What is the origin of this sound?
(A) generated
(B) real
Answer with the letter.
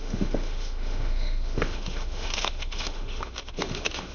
A